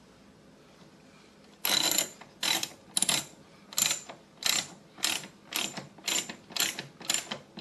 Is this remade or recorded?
recorded